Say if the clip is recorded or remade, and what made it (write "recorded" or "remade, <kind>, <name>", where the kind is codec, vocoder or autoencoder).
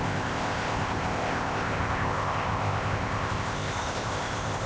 remade, codec, ZipCodec